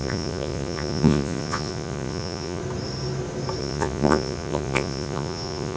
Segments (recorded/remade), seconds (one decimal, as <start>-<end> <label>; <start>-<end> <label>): 0.0-2.6 remade; 2.6-3.6 recorded; 3.6-5.8 remade